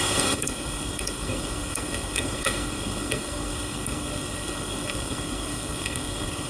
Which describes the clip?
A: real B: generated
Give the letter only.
B